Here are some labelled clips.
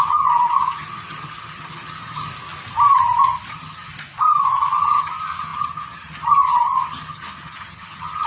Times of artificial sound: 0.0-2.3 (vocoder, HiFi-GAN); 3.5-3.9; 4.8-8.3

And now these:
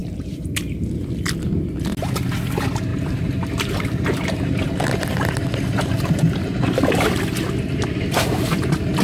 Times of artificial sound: 0.0-0.9 (vocoder, BigVGAN v2); 2.9-4.6

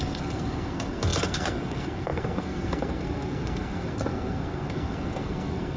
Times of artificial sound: 0.0-5.8 (codec, SNAC)

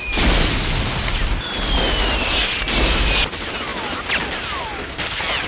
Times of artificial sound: none

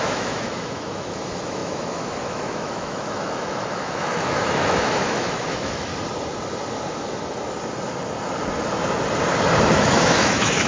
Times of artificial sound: 0.0-5.9 (autoencoder, DAC-VAE); 9.7-10.7

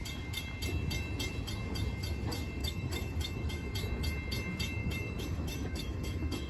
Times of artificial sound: 2.6-3.7 (autoencoder, DAC-VAE); 4.8-6.5